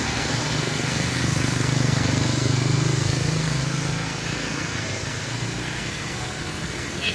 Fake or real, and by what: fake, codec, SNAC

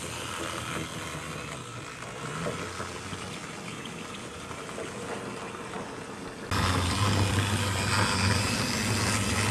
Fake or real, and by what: real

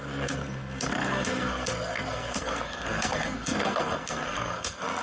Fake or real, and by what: fake, codec, SNAC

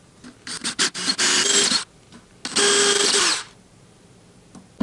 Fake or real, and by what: real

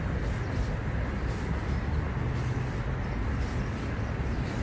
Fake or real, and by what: real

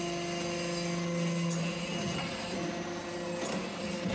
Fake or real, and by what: real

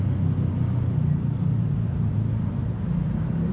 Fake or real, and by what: real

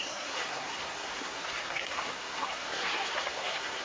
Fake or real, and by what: fake, codec, SNAC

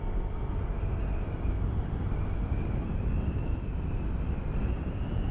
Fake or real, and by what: real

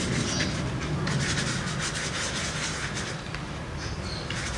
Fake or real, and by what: real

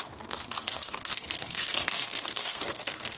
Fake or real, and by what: fake, codec, SNAC